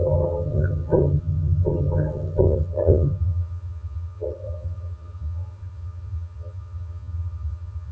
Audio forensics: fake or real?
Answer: fake